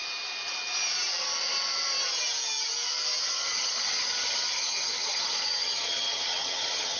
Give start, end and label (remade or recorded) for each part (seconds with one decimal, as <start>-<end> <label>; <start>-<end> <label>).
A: 0.0-3.2 recorded; 3.2-7.0 remade